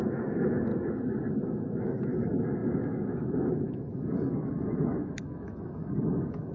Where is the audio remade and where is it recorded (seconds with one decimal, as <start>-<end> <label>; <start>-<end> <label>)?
0.0-0.7 remade; 0.7-1.3 recorded; 1.3-6.5 remade